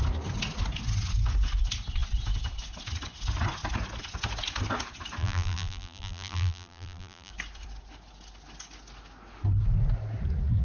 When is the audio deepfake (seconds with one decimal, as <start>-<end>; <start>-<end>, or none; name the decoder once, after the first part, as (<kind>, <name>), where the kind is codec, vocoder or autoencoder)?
5.2-7.3 (vocoder, BigVGAN v2)